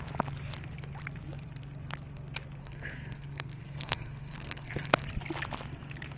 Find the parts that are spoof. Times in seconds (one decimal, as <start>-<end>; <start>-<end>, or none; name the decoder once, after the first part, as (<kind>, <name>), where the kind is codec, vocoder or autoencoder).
2.6-5.1 (codec, SNAC)